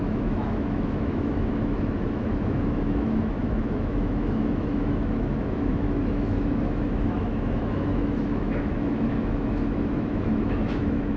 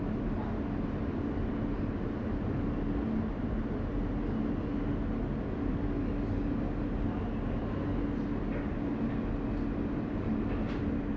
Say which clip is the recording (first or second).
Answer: second